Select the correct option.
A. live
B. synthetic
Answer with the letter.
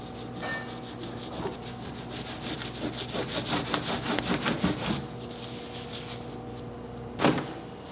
A